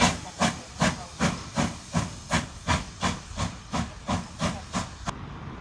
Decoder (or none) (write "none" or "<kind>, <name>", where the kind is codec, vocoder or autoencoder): none